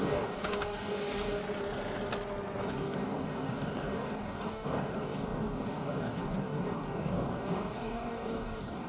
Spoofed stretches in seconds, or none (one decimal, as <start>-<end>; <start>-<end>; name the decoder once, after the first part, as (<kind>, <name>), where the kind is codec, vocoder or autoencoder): 0.0-1.4 (codec, DAC); 2.6-8.9